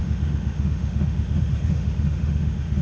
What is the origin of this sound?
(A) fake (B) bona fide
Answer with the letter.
A